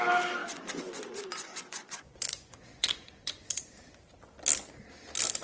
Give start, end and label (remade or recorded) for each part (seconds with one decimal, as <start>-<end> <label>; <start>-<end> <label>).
0.0-0.4 recorded; 0.4-3.6 remade; 3.6-5.4 recorded